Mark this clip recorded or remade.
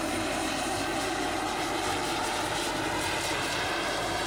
remade